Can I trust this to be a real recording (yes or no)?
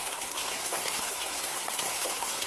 no